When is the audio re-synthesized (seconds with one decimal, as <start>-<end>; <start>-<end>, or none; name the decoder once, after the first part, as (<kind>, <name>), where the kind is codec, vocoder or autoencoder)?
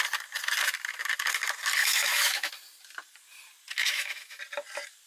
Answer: 1.8-2.5 (autoencoder, DAC-VAE); 3.8-4.4